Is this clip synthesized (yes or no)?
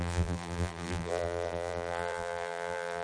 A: yes